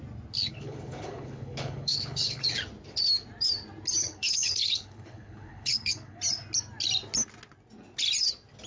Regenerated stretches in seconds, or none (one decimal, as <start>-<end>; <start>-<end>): 0.5-2.4; 4.0-6.2